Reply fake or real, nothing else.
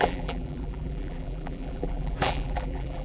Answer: fake